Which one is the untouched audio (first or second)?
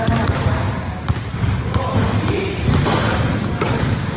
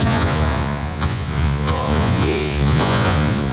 first